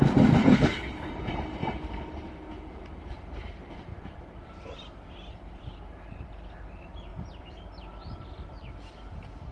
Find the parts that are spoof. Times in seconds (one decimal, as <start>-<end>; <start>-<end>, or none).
0.4-1.1